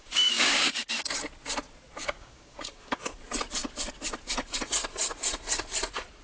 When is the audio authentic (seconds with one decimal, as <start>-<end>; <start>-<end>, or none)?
0.9-2.0; 3.0-6.2